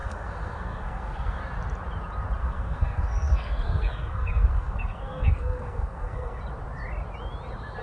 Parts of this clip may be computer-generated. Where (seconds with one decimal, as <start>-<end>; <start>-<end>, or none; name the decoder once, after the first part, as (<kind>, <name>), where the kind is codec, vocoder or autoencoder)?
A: 0.0-1.4 (codec, SNAC); 2.4-6.4